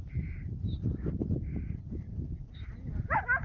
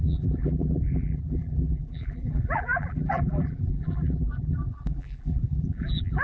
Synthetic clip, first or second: second